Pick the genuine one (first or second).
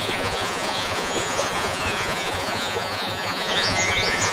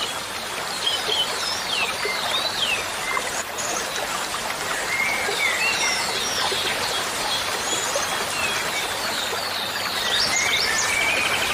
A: second